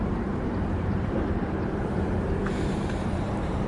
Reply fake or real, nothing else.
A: fake